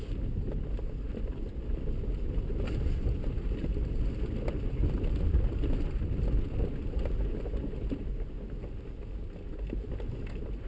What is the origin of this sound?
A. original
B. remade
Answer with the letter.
A